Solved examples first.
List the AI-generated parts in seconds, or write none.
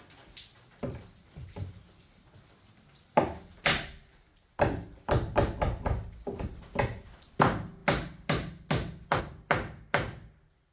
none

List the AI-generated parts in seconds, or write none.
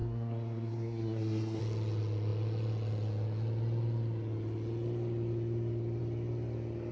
0.0-1.6 (codec, SNAC)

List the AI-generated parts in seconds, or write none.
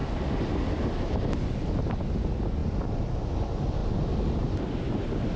none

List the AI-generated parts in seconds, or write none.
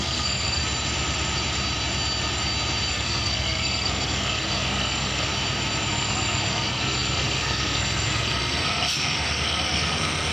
0.0-0.6 (codec, SNAC); 2.9-5.3; 5.9-10.3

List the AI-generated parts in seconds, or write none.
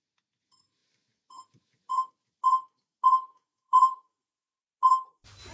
3.3-4.6 (vocoder, Vocos)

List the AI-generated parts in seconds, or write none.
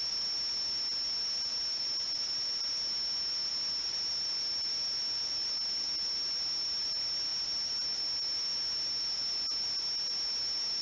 none